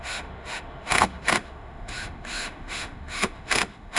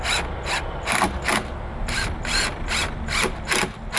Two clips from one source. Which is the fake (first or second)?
first